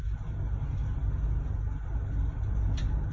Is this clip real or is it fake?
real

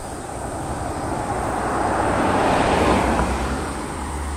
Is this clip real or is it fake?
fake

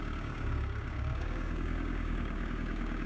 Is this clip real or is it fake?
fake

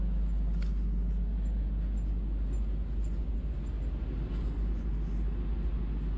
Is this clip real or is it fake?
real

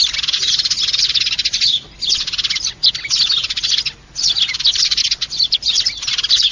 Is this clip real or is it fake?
real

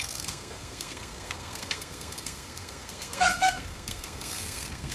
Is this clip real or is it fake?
fake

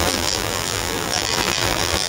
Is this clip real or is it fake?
fake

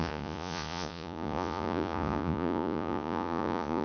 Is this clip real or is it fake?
fake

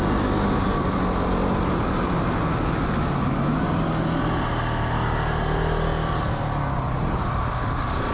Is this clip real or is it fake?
real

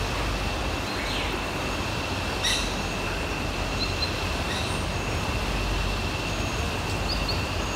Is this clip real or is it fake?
real